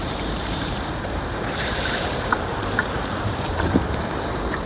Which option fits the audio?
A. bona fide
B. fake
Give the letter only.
B